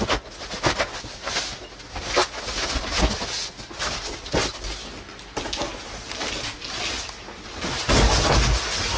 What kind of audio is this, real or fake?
real